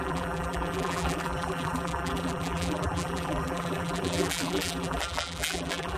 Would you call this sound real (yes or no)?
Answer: no